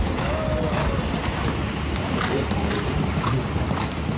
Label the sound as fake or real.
real